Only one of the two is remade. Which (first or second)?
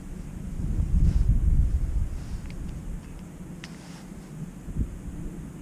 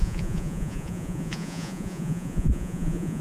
second